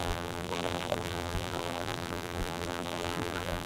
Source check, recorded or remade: remade